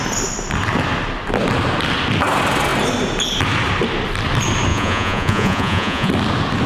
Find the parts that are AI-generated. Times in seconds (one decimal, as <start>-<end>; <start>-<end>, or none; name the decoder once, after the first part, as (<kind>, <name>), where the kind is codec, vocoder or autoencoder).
4.7-6.1 (vocoder, Vocos)